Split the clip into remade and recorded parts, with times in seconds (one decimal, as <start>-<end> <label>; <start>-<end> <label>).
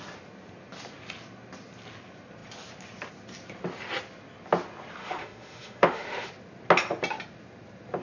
0.0-5.0 recorded; 5.0-6.3 remade; 6.3-8.0 recorded